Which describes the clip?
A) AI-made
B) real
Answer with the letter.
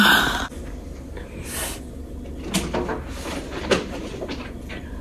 B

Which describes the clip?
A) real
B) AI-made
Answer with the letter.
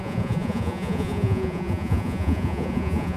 B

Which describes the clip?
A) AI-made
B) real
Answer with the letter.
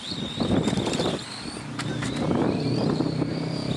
B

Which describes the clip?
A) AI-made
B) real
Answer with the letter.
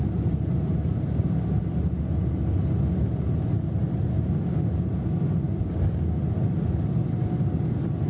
B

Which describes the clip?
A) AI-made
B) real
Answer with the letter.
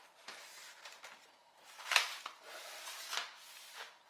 B